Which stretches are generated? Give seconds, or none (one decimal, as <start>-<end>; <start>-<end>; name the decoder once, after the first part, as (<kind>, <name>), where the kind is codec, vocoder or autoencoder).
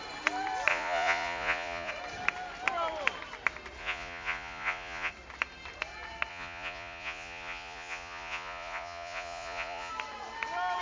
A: 0.7-1.9 (vocoder, Vocos); 3.8-5.1; 6.3-9.9